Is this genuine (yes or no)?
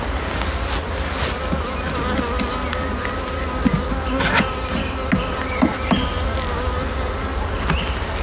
yes